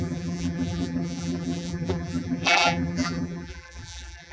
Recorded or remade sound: remade